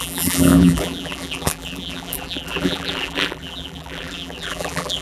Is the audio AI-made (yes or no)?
yes